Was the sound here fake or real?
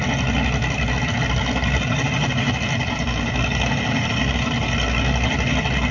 real